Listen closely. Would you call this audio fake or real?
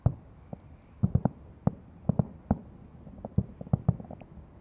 real